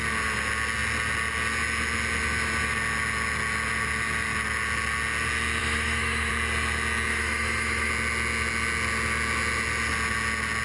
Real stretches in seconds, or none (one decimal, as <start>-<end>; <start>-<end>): 0.0-5.6; 6.3-7.1; 7.9-10.6